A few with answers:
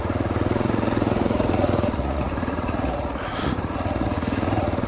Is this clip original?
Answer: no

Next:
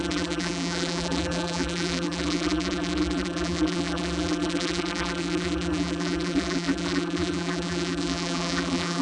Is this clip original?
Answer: no